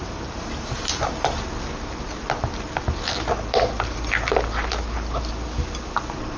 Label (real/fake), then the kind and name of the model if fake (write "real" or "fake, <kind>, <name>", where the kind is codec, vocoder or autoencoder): real